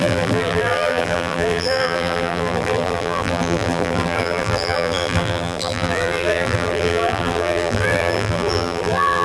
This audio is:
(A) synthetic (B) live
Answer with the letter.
A